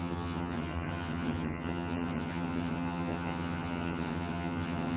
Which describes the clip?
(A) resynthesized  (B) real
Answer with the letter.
A